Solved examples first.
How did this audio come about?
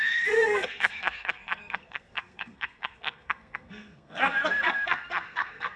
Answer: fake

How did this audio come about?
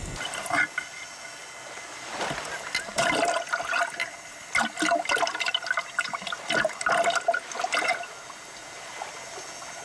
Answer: real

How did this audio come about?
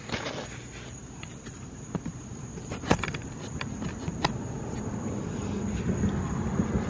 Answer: real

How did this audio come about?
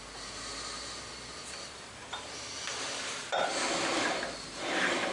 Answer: real